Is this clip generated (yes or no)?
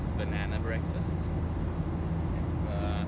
no